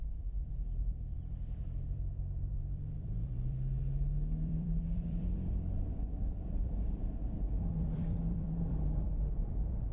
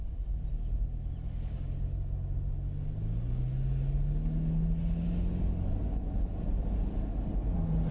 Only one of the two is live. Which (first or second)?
second